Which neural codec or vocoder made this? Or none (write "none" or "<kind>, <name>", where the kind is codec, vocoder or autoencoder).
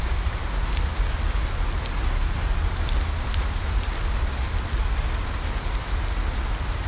none